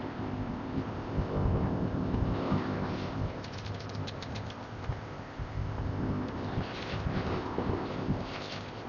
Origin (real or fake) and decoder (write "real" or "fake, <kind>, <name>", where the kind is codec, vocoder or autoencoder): fake, codec, ZipCodec